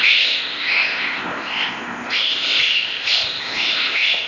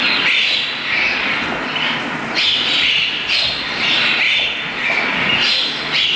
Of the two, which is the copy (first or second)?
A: first